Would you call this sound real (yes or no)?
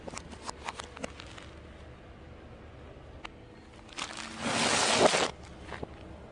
yes